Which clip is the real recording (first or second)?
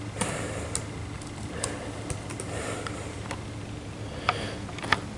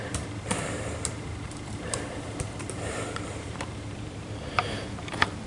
first